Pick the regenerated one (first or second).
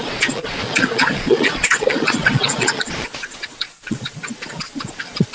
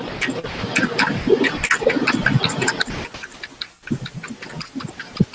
first